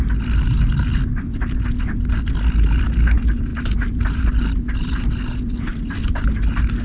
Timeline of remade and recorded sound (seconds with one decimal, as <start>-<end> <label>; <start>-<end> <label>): 0.0-3.5 recorded; 3.5-4.3 remade; 4.3-5.7 recorded; 5.7-6.8 remade